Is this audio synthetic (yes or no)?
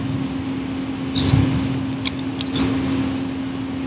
no